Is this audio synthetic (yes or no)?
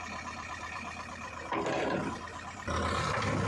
no